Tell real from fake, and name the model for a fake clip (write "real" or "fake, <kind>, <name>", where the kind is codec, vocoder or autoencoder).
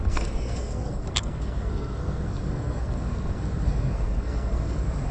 fake, codec, SNAC